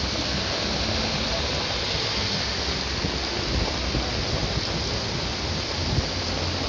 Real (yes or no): yes